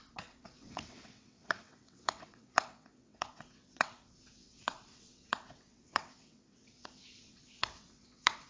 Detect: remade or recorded remade